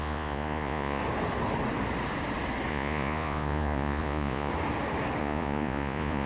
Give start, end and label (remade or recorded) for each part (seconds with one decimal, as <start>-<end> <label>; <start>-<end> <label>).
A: 0.0-1.0 remade; 1.0-2.7 recorded; 2.7-4.5 remade; 4.5-5.2 recorded; 5.2-6.3 remade